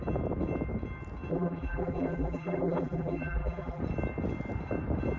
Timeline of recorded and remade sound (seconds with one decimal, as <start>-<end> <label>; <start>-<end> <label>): 0.0-1.3 recorded; 1.3-3.8 remade; 3.8-5.2 recorded